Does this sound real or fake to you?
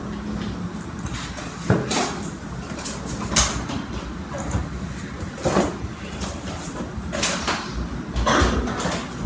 real